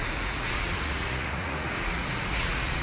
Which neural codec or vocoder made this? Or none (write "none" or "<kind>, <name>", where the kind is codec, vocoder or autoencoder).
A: vocoder, Vocos